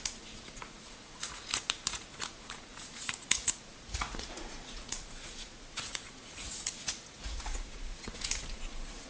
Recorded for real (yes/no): no